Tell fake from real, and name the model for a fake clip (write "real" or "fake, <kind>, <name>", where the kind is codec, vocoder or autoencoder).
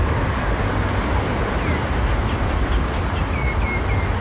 real